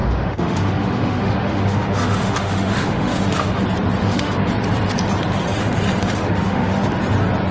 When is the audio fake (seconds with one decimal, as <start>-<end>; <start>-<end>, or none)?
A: 0.0-3.6; 4.0-4.5; 6.0-6.9